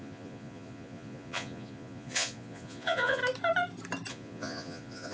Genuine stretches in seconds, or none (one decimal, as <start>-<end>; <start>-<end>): 3.2-4.1